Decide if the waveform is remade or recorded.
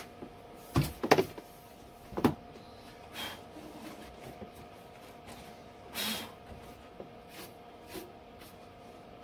recorded